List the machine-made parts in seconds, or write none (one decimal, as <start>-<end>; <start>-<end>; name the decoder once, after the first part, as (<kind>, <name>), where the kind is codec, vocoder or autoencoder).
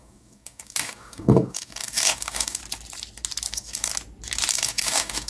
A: 0.0-2.6 (codec, DAC); 3.5-3.9; 4.5-5.3